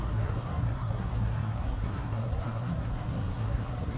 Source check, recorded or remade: remade